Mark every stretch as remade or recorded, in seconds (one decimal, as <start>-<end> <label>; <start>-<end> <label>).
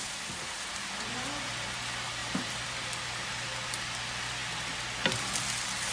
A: 0.0-1.8 remade; 1.8-2.2 recorded; 2.2-3.7 remade; 3.7-5.9 recorded